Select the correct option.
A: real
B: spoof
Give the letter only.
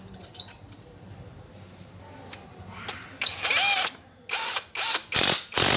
A